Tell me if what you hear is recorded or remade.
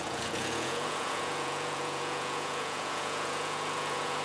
remade